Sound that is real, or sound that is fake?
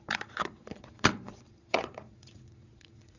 fake